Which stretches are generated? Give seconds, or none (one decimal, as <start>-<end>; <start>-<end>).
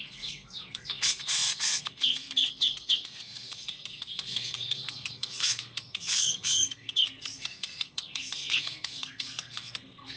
0.0-10.2